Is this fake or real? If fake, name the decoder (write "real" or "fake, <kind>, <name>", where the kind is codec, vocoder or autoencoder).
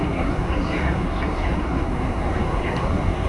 fake, codec, SNAC